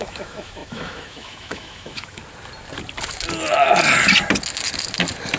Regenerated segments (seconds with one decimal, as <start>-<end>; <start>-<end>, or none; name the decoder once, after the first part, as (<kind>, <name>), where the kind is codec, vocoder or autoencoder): 0.0-2.2 (autoencoder, DAC-VAE)